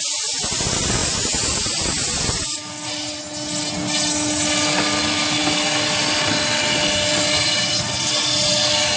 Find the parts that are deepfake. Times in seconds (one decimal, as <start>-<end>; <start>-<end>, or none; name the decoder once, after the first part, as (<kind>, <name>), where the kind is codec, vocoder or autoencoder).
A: none